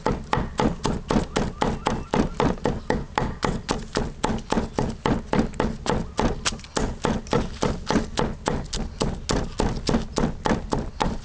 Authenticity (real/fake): real